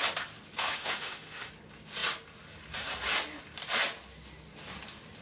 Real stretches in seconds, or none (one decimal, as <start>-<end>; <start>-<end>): 0.0-0.6; 1.5-5.2